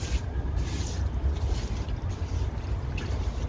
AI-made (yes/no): no